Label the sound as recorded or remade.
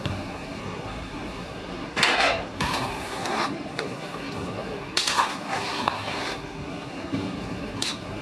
remade